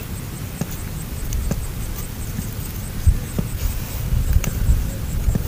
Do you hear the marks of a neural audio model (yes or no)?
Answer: yes